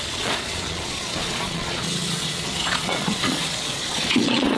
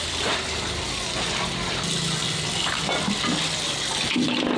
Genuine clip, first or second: second